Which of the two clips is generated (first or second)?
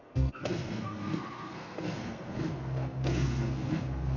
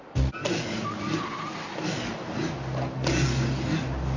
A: first